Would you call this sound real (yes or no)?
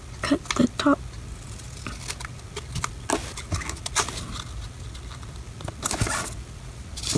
yes